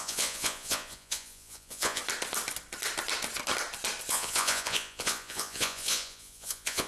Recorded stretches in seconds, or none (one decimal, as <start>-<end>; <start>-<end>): 2.0-4.1